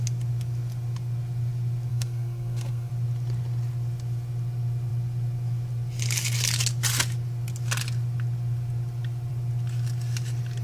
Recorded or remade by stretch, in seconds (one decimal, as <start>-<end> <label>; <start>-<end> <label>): 0.0-1.9 recorded; 1.9-2.9 remade; 2.9-10.6 recorded